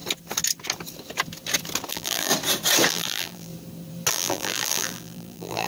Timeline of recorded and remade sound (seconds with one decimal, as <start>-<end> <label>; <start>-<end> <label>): 0.0-1.9 recorded; 1.9-2.3 remade; 2.3-2.9 recorded; 2.9-3.5 remade; 3.5-4.1 recorded; 4.1-5.7 remade